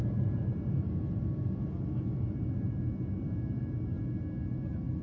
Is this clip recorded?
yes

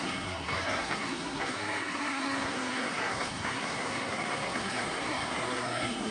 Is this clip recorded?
no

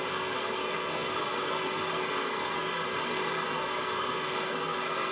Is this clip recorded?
no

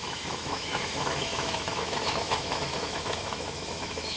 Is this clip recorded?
no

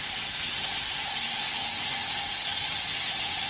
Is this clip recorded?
yes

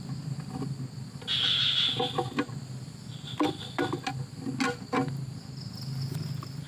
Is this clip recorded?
yes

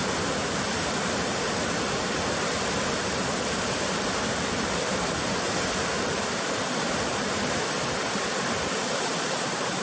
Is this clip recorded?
no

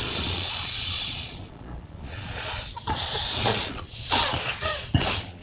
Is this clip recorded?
no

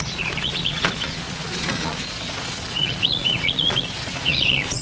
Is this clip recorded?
no